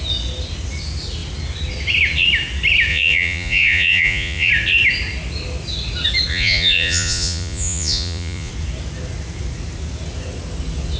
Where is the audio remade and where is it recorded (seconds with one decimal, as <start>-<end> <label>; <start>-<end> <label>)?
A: 0.0-2.9 recorded; 2.9-4.5 remade; 4.5-6.3 recorded; 6.3-8.5 remade; 8.5-11.0 recorded